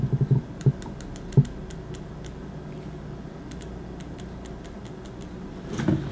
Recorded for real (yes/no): yes